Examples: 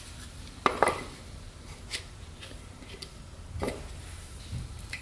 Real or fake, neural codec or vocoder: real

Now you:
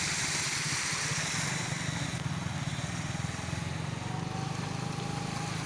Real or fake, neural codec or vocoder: real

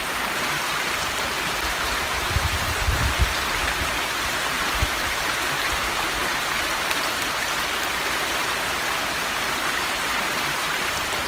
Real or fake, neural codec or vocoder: fake, vocoder, BigVGAN v2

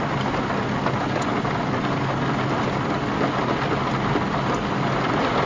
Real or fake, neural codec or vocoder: real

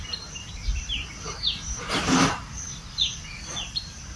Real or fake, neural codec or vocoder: fake, vocoder, BigVGAN v2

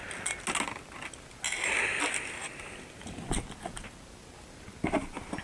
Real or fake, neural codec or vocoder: real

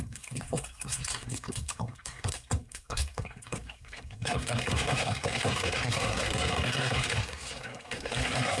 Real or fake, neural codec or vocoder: fake, codec, SNAC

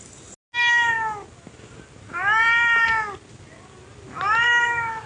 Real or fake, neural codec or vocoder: real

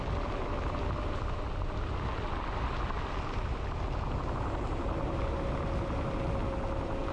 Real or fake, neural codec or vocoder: real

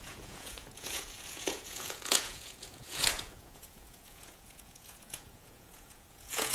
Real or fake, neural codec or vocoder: fake, vocoder, Vocos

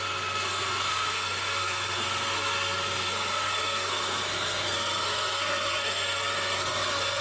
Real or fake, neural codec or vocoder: fake, codec, SNAC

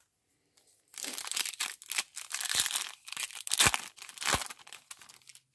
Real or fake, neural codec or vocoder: real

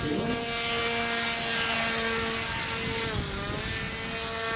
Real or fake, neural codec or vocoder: real